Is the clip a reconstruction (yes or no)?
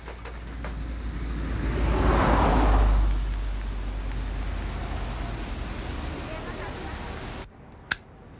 no